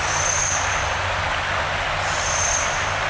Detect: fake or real real